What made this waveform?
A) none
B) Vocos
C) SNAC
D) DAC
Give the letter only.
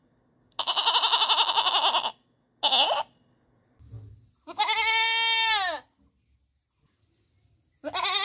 A